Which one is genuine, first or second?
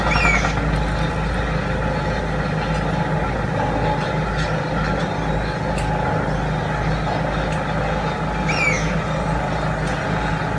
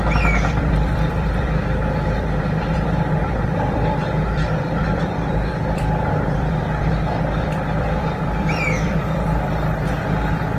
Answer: first